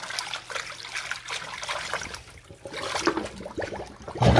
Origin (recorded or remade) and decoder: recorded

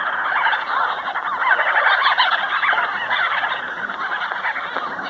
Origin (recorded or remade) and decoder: recorded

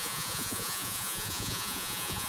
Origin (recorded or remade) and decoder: remade, vocoder, Vocos